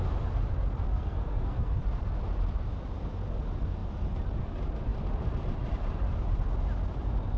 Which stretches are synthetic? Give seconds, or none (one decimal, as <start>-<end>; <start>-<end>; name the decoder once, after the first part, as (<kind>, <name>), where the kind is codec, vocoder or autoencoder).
0.9-1.8 (codec, SNAC)